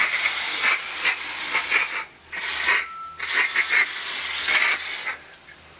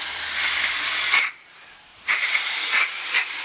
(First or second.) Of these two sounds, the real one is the first